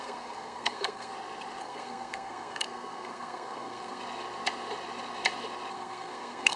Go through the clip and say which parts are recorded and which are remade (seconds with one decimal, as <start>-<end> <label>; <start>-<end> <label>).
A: 0.0-1.1 remade; 1.1-1.6 recorded; 1.6-4.0 remade; 4.0-5.7 recorded; 5.7-6.6 remade